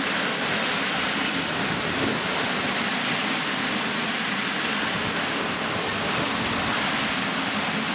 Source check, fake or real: fake